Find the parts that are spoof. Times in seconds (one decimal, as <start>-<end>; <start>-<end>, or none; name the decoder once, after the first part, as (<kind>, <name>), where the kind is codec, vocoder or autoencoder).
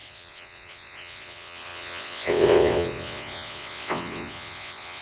0.0-5.0 (vocoder, WaveNeXt)